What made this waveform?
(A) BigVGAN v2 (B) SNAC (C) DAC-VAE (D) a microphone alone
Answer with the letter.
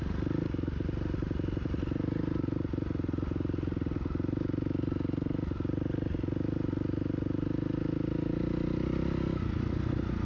D